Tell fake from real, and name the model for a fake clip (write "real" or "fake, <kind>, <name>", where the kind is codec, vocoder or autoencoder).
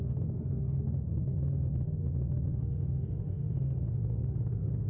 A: fake, autoencoder, DAC-VAE